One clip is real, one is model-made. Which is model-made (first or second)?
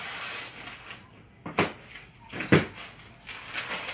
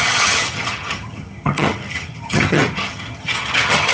second